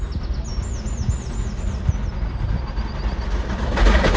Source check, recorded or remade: recorded